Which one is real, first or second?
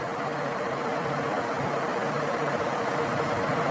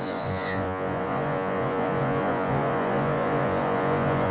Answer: first